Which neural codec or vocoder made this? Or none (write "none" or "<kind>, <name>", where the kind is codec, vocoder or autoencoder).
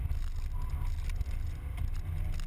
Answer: none